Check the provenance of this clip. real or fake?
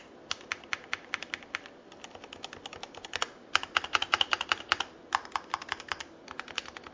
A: real